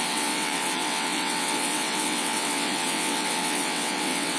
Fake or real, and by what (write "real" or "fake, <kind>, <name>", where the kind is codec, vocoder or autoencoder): fake, vocoder, WaveNeXt